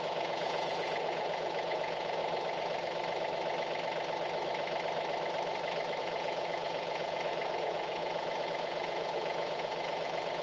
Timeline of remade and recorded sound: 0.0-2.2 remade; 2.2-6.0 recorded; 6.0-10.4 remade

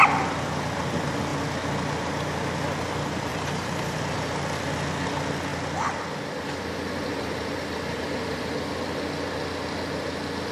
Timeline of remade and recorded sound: 0.0-3.3 recorded; 3.3-4.0 remade; 4.0-7.1 recorded; 7.1-8.5 remade; 8.5-10.5 recorded

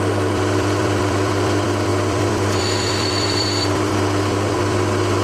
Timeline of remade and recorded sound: 0.0-5.2 remade

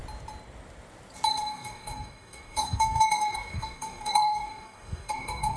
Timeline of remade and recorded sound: 0.0-1.3 recorded; 1.3-5.6 remade

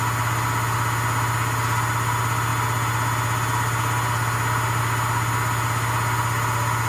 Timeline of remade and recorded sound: 0.0-6.9 recorded

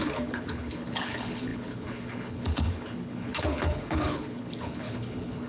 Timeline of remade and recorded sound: 0.0-5.5 remade

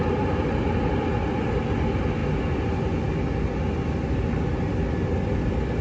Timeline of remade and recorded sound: 0.0-5.8 recorded

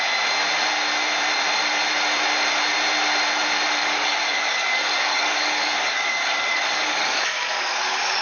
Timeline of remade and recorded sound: 0.0-3.8 recorded; 3.8-8.2 remade